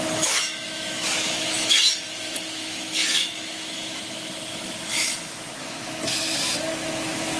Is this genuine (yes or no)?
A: no